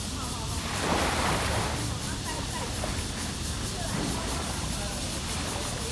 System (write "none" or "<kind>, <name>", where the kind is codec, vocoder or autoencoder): none